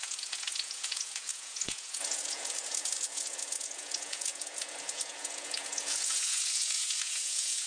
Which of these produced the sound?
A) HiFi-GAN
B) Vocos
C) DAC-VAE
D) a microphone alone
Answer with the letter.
B